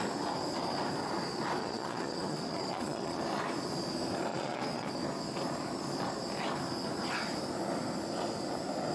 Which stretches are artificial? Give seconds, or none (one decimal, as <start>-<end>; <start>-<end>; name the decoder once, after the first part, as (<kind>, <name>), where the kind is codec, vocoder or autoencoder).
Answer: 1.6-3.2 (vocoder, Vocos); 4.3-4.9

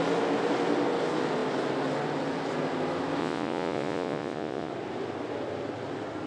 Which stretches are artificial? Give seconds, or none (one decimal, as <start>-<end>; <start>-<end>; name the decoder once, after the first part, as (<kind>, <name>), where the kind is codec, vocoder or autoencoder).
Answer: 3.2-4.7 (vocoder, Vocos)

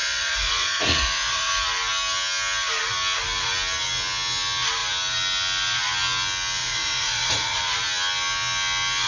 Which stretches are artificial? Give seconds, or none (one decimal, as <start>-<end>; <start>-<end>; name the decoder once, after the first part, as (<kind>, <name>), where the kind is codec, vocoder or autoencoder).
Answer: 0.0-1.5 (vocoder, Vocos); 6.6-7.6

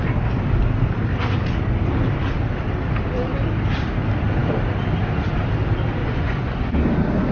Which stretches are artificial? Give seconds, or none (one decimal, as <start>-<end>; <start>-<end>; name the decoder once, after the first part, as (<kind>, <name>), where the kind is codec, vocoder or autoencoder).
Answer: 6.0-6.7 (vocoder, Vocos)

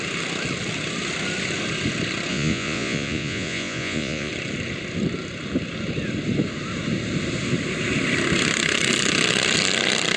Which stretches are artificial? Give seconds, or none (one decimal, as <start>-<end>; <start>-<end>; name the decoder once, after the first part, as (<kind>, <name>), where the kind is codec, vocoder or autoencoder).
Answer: 2.3-4.3 (vocoder, Vocos)